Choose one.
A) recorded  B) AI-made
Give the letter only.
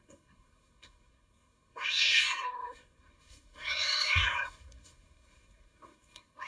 B